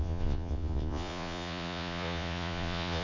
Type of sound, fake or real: fake